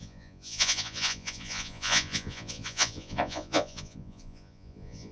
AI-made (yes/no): yes